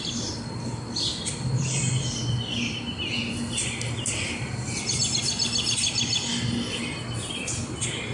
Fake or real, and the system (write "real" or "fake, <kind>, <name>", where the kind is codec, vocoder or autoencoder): real